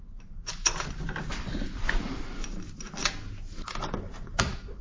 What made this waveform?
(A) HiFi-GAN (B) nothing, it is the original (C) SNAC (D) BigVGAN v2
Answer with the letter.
B